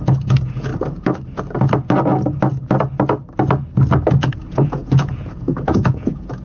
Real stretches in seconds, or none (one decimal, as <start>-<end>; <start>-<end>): 0.7-4.3